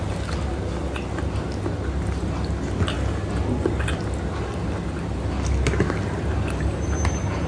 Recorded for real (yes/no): yes